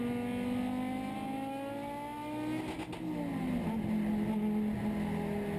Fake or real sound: real